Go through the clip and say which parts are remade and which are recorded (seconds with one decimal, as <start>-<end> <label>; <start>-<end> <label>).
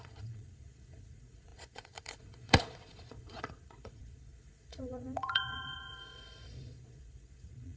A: 0.0-7.8 remade